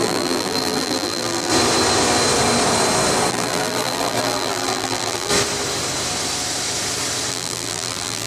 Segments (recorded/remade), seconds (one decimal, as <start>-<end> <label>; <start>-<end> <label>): 0.0-1.5 remade; 1.5-3.3 recorded; 3.3-5.3 remade; 5.3-7.3 recorded; 7.3-8.3 remade